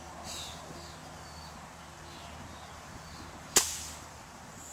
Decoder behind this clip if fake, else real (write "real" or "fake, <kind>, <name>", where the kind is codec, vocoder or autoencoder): real